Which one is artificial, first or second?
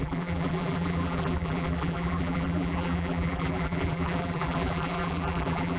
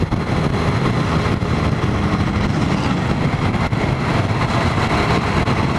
first